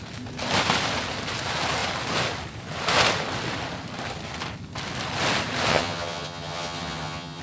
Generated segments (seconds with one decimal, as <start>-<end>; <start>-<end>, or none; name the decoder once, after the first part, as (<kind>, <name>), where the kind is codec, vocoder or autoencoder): 5.7-7.4 (vocoder, HiFi-GAN)